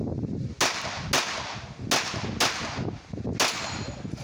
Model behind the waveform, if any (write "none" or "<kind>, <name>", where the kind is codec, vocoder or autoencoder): none